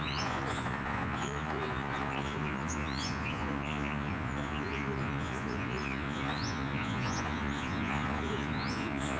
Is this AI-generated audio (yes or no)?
yes